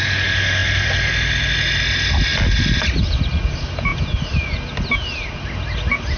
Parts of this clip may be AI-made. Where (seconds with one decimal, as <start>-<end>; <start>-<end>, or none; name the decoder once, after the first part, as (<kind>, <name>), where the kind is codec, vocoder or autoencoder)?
0.6-1.6 (vocoder, BigVGAN v2)